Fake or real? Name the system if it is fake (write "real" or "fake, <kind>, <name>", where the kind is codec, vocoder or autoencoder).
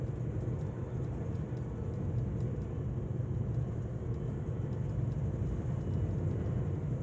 real